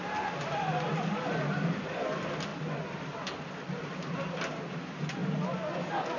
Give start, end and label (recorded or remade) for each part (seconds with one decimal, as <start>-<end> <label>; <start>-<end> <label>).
0.0-6.2 recorded